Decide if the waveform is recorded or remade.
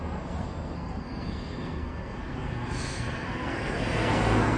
remade